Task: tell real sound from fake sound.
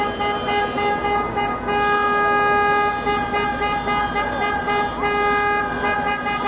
real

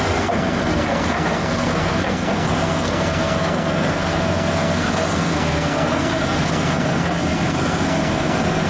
fake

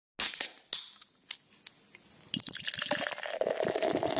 real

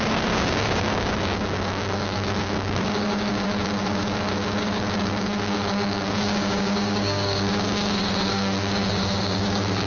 fake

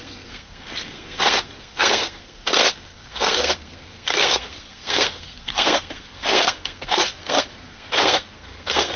fake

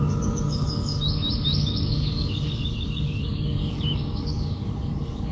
fake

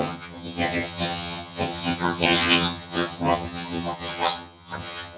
fake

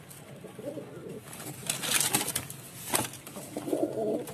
real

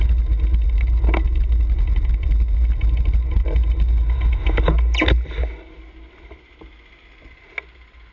real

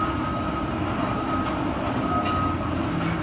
real